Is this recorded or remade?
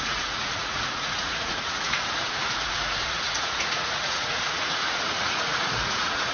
remade